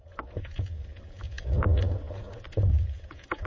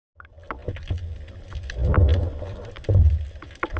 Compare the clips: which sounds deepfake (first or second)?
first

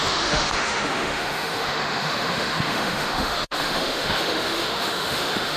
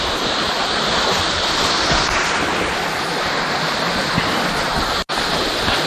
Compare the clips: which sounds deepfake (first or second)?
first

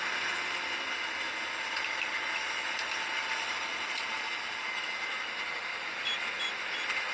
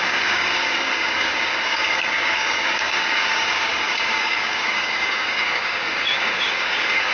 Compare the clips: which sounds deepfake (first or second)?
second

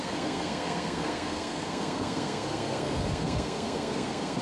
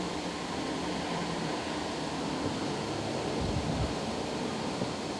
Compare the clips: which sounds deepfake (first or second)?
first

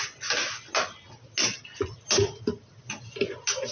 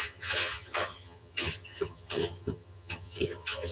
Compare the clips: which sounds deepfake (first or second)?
second